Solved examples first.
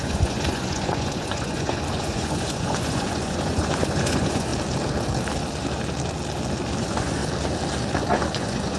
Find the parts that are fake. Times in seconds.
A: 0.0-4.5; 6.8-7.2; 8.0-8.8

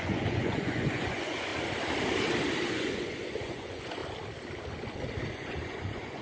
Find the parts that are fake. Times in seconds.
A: 0.0-1.5; 2.7-4.0; 5.3-6.2